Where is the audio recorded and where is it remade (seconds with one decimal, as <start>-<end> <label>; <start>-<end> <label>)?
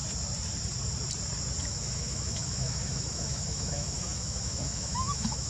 0.0-1.6 recorded; 1.6-5.5 remade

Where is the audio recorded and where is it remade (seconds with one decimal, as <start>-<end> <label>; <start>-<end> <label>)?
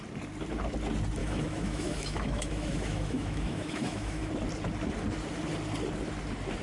0.0-1.2 recorded; 1.2-4.3 remade; 4.3-6.6 recorded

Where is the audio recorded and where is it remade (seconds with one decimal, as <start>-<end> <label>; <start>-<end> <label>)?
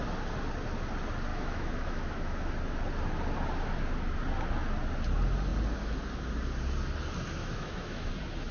0.0-1.3 recorded; 1.3-2.5 remade; 2.5-7.4 recorded; 7.4-8.1 remade; 8.1-8.5 recorded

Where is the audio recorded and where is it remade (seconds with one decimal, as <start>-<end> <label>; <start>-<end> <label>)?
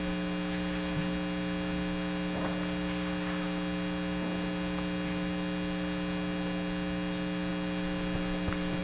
0.0-8.8 recorded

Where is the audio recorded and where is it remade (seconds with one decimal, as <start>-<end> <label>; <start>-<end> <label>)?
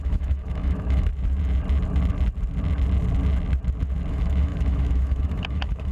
0.0-1.1 remade; 1.1-4.1 recorded; 4.1-5.9 remade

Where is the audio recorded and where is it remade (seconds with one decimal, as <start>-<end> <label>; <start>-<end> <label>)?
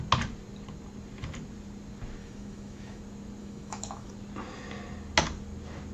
0.0-2.2 recorded; 2.2-3.0 remade; 3.0-3.4 recorded; 3.4-4.1 remade; 4.1-5.9 recorded